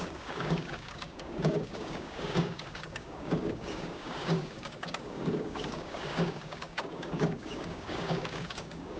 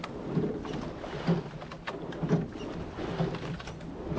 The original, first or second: second